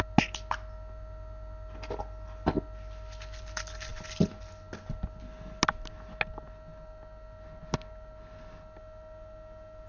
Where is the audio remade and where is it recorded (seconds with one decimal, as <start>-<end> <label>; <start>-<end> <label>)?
0.0-9.9 recorded